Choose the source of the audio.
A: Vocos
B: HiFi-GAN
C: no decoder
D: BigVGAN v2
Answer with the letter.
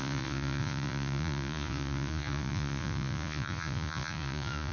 A